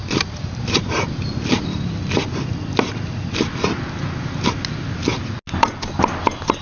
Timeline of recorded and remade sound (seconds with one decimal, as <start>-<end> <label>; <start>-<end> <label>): 0.0-0.8 remade; 0.8-6.6 recorded

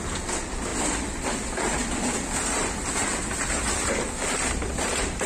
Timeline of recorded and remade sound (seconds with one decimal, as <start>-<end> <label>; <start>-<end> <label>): 0.0-5.3 recorded

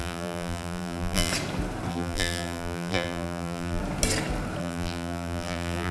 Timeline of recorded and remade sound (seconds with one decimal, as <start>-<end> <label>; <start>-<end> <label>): 0.0-1.3 remade; 1.3-1.9 recorded; 1.9-3.8 remade; 3.8-4.6 recorded; 4.6-5.9 remade

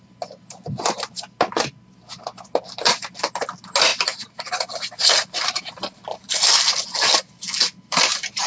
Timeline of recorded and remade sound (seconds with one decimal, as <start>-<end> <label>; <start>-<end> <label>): 0.0-5.2 recorded; 5.2-6.0 remade; 6.0-8.5 recorded

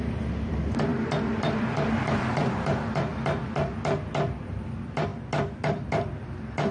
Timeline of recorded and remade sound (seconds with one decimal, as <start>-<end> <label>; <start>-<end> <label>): 0.0-3.1 remade; 3.1-3.8 recorded; 3.8-5.1 remade; 5.1-5.8 recorded; 5.8-6.7 remade

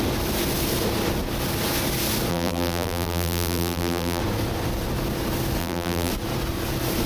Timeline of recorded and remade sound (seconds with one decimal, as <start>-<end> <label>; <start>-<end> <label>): 0.0-2.3 recorded; 2.3-4.2 remade; 4.2-5.6 recorded; 5.6-6.1 remade; 6.1-7.1 recorded

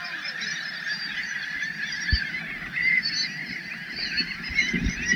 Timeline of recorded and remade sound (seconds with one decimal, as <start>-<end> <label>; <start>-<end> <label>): 0.0-5.2 remade

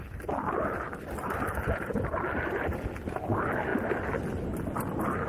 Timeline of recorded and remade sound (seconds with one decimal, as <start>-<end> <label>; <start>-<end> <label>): 0.0-3.2 remade; 3.2-5.3 recorded